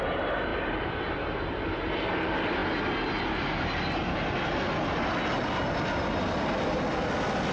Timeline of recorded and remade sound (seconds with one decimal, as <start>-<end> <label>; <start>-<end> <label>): 0.0-0.5 recorded; 0.5-1.4 remade; 1.4-7.5 recorded